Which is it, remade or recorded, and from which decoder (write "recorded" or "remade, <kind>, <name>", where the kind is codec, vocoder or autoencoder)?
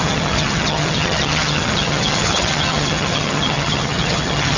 remade, vocoder, HiFi-GAN